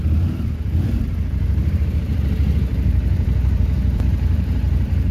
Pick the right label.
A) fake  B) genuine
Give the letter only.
A